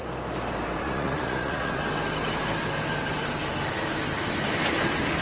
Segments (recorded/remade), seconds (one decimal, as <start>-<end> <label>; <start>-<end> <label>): 0.0-0.8 recorded; 0.8-1.8 remade; 1.8-5.2 recorded